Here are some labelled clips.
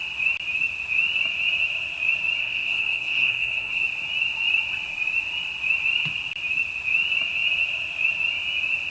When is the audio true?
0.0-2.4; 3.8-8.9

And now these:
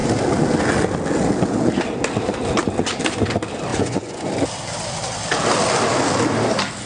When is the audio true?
0.0-3.7; 4.3-6.9

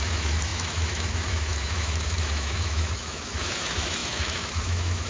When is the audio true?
none

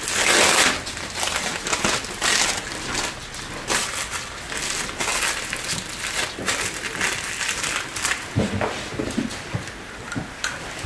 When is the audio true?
0.0-10.9